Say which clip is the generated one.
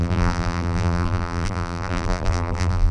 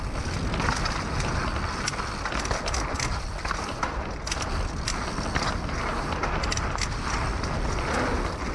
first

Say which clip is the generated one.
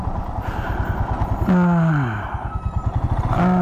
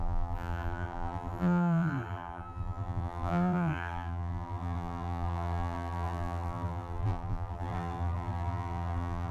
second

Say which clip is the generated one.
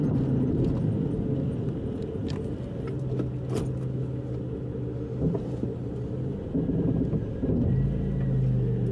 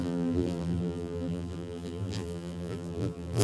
second